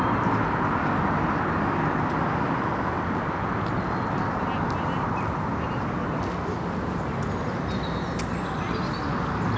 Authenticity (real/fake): real